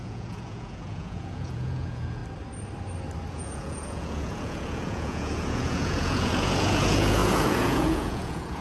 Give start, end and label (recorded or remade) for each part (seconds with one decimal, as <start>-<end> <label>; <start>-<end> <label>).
0.0-2.2 remade; 2.2-3.3 recorded; 3.3-8.6 remade